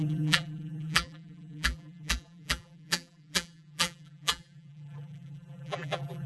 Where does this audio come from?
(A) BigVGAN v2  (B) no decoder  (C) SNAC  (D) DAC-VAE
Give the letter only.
A